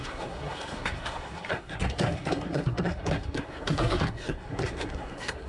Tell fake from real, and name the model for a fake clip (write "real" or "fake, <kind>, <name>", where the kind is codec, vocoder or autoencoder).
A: fake, codec, SNAC